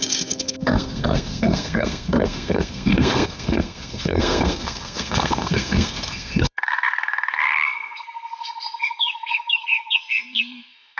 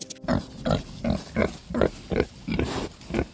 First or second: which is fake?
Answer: first